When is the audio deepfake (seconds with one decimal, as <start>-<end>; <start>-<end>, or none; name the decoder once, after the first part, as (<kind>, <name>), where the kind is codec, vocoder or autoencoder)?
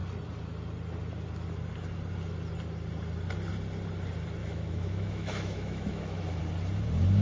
4.4-6.4 (autoencoder, DAC-VAE)